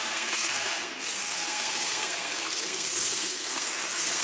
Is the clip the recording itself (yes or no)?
no